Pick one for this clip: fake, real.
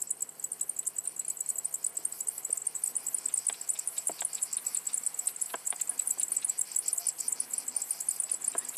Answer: real